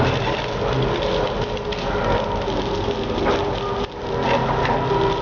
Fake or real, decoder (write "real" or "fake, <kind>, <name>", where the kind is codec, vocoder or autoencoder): real